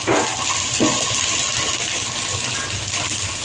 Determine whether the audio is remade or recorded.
recorded